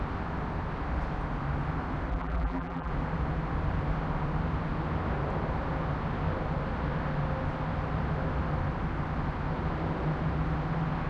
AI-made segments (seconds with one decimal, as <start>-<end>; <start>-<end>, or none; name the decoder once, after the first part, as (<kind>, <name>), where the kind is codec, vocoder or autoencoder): 2.1-2.9 (vocoder, BigVGAN v2)